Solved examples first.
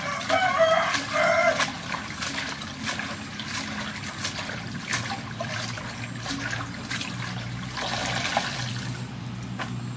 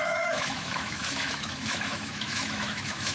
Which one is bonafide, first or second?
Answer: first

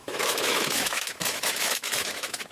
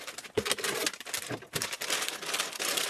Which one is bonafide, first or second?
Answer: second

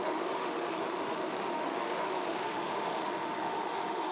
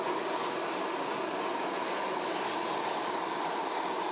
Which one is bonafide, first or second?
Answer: second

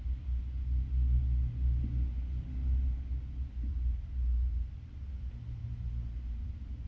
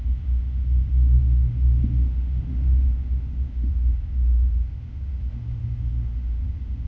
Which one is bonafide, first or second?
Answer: first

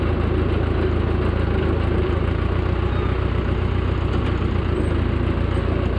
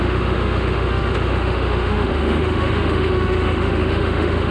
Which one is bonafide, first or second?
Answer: first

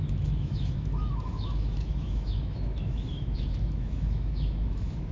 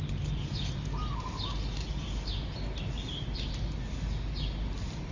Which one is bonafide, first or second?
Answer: second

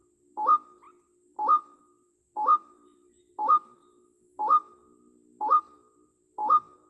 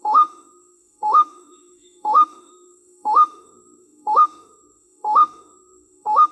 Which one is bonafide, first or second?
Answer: first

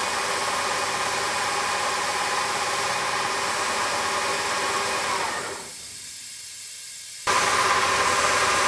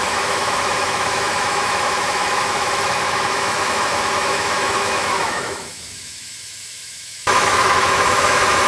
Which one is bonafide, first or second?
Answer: first